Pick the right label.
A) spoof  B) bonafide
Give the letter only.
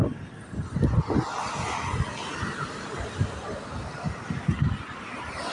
B